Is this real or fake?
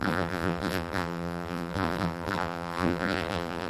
fake